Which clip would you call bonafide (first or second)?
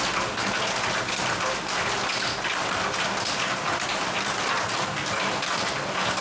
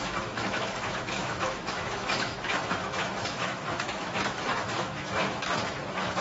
first